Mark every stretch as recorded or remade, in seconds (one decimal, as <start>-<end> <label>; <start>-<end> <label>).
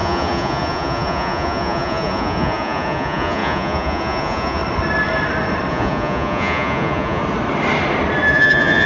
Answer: 0.0-4.6 remade; 4.6-5.7 recorded; 5.7-7.2 remade; 7.2-8.3 recorded; 8.3-8.9 remade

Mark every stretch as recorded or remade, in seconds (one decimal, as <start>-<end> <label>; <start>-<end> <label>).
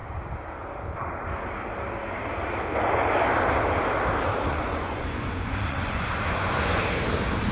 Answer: 0.0-4.5 recorded; 4.5-6.8 remade; 6.8-7.5 recorded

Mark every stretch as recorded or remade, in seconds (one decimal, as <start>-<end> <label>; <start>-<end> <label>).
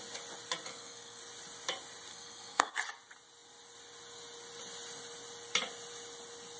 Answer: 0.0-0.7 recorded; 0.7-1.2 remade; 1.2-2.1 recorded; 2.1-2.7 remade; 2.7-6.6 recorded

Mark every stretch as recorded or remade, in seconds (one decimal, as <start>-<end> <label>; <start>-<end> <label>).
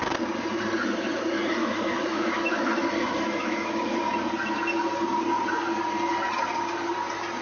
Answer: 0.0-1.6 recorded; 1.6-4.0 remade; 4.0-7.4 recorded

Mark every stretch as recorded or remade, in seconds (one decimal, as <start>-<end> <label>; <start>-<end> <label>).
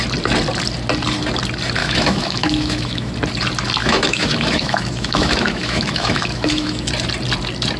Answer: 0.0-1.8 recorded; 1.8-3.1 remade; 3.1-3.8 recorded; 3.8-6.9 remade; 6.9-7.8 recorded